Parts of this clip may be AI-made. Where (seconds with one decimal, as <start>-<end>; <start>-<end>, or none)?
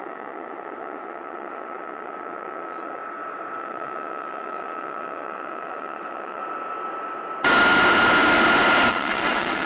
0.0-3.0; 3.6-6.4; 8.9-9.7